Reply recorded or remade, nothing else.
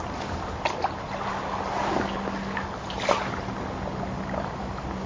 recorded